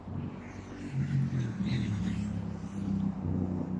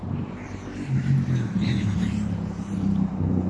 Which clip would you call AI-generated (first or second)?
second